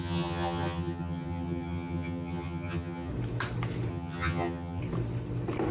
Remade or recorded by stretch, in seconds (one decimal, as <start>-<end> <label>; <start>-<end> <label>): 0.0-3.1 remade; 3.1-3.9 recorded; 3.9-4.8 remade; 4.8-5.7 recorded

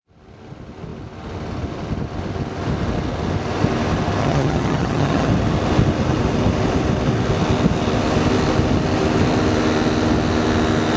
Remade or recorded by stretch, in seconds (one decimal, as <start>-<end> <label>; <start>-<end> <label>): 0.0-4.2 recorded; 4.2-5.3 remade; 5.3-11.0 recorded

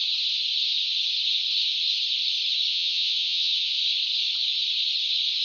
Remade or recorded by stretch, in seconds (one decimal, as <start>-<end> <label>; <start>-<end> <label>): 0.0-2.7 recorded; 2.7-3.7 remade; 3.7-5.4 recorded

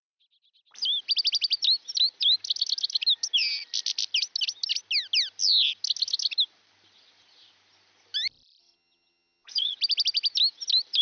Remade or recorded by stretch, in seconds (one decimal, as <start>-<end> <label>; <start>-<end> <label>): 0.0-8.6 recorded; 8.6-9.8 remade; 9.8-11.0 recorded